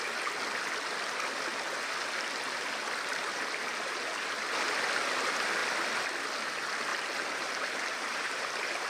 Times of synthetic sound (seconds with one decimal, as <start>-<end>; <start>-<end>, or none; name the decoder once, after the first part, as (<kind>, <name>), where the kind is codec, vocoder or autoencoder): 3.1-4.4 (vocoder, BigVGAN v2); 6.9-8.5